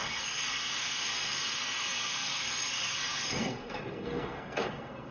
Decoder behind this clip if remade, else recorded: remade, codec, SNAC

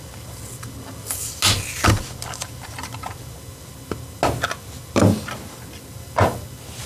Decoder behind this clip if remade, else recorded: recorded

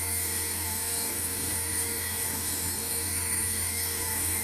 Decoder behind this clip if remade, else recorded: remade, codec, DAC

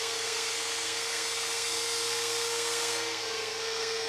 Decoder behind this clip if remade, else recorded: remade, codec, SNAC